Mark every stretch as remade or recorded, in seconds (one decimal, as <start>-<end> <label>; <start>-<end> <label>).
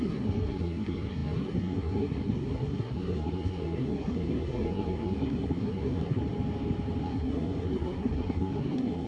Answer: 0.0-6.2 remade; 6.2-7.0 recorded; 7.0-9.1 remade